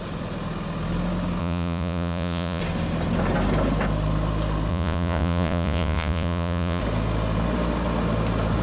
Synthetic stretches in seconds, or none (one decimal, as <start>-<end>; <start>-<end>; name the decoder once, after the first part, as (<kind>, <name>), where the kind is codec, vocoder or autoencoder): 1.4-2.6 (vocoder, Vocos); 4.7-6.8